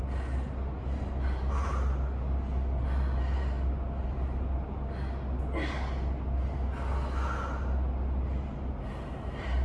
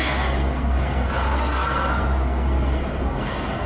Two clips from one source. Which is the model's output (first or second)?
second